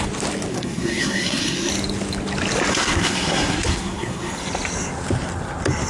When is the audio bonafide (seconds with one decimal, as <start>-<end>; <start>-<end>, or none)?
0.0-0.5; 1.7-2.7; 4.3-5.9